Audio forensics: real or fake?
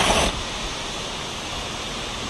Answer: real